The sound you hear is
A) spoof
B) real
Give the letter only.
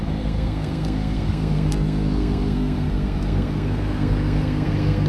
A